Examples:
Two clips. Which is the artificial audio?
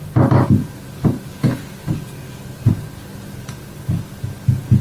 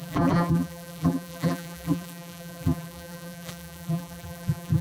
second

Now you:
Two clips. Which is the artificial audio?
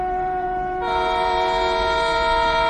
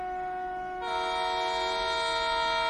first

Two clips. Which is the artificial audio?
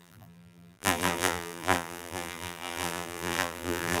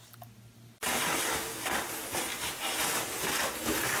first